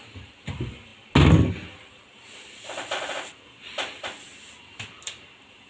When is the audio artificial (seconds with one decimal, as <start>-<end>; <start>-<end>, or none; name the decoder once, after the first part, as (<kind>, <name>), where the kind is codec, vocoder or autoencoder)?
none